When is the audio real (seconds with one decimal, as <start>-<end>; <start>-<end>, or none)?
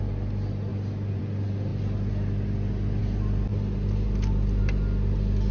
0.0-5.5